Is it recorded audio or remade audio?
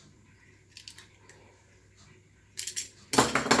recorded